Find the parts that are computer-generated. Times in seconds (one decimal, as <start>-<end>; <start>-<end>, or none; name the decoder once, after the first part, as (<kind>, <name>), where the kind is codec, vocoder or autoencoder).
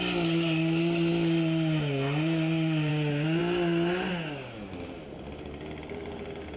none